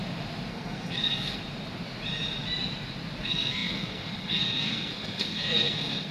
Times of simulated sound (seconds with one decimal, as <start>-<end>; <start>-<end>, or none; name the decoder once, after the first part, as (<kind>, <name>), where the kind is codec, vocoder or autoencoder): 0.5-1.4 (codec, SNAC); 3.2-6.1